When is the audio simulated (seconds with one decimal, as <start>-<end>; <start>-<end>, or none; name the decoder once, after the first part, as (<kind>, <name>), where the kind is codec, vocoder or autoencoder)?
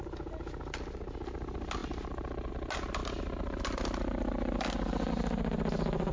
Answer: none